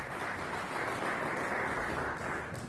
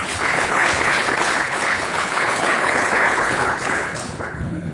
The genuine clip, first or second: first